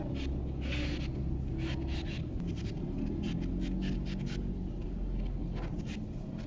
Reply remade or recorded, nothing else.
recorded